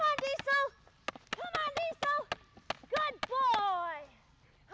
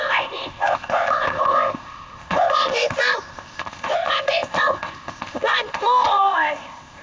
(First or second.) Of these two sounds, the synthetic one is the second